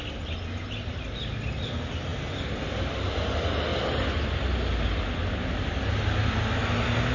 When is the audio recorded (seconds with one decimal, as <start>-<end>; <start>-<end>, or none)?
0.0-7.1